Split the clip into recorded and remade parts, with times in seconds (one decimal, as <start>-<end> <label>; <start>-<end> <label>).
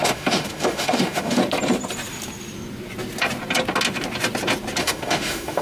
0.0-1.4 remade; 1.4-4.8 recorded; 4.8-5.6 remade